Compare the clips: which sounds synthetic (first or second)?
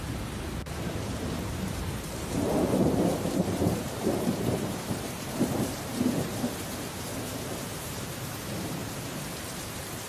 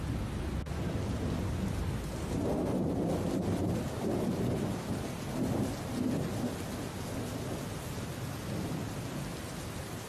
first